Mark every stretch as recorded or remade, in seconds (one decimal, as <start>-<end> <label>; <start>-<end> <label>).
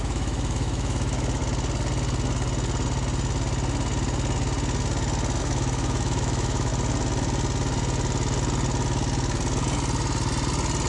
0.0-1.4 remade; 1.4-5.4 recorded; 5.4-6.7 remade; 6.7-10.9 recorded